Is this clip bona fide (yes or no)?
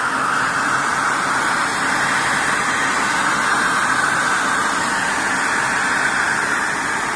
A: yes